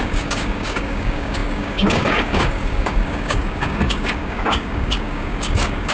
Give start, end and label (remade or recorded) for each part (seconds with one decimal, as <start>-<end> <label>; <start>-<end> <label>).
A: 0.0-5.9 remade